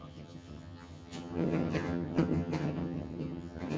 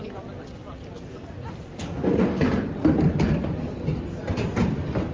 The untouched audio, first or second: second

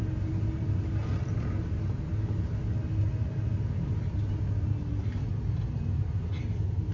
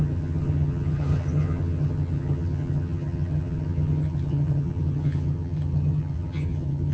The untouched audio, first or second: first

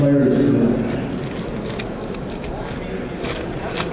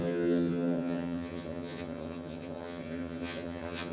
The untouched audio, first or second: first